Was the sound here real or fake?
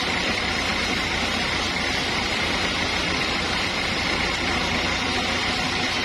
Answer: fake